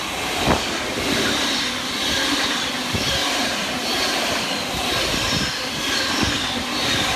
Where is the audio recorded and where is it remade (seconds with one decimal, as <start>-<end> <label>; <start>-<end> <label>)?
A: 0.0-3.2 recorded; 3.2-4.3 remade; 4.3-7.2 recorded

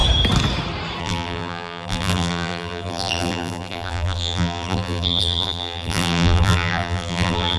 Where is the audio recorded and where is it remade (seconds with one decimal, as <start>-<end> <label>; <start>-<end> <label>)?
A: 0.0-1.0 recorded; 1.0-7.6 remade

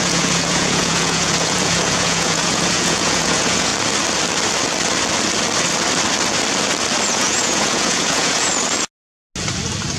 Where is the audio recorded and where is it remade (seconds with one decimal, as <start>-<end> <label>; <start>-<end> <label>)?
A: 0.0-3.7 remade; 3.7-7.1 recorded; 7.1-8.5 remade; 8.5-10.0 recorded